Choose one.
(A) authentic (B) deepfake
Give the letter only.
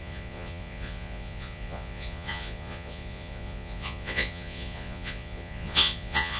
B